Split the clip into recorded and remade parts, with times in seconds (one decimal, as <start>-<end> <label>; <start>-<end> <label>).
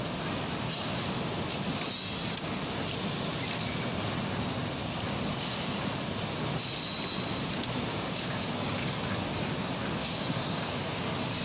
0.0-7.9 recorded; 7.9-8.9 remade; 8.9-10.0 recorded; 10.0-10.8 remade; 10.8-11.4 recorded